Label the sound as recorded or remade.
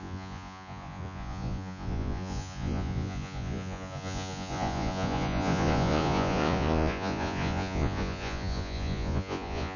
remade